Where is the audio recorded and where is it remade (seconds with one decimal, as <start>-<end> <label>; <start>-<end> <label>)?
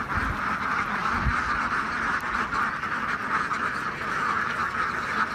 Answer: 0.0-5.3 recorded